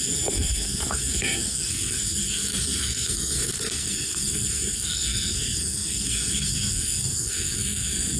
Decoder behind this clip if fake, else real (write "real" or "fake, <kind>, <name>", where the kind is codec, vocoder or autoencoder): fake, codec, SNAC